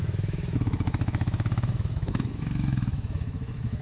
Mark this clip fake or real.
fake